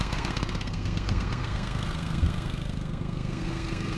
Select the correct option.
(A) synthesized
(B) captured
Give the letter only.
A